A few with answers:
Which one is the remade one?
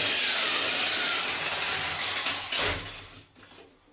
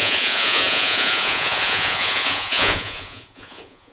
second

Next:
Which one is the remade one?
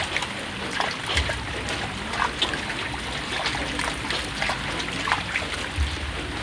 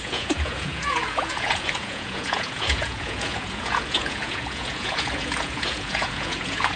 second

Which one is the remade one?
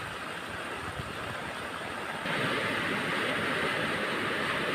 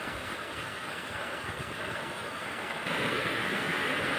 second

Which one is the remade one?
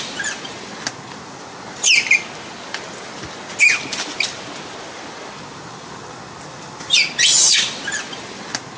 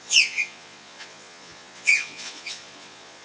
second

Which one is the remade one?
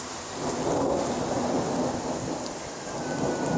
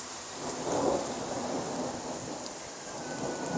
second